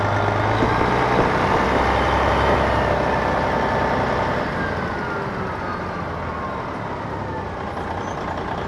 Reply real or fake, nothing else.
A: real